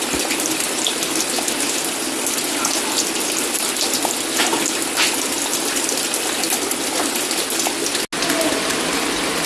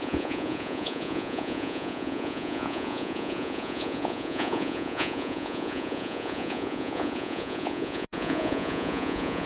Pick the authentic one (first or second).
first